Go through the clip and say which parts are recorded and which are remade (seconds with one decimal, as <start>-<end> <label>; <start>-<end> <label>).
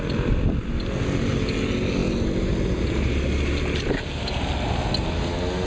0.0-5.7 recorded